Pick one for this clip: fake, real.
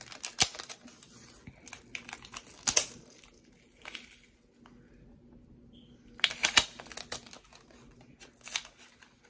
real